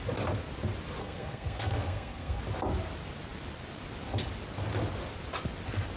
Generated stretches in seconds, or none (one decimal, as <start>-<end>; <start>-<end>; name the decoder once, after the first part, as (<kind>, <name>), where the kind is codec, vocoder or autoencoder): 1.0-2.4 (codec, SNAC)